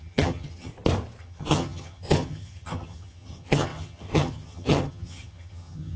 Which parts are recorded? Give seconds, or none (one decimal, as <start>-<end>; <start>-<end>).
0.7-1.2